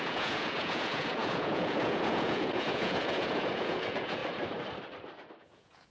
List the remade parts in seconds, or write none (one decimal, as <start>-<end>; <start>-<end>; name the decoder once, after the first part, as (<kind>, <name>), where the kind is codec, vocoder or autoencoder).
0.0-4.2 (vocoder, Vocos); 5.4-5.9